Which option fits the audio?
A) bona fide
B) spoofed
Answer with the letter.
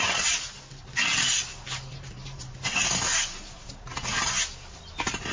A